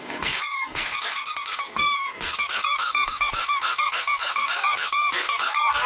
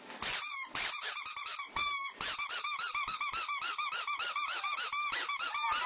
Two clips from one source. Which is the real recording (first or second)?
second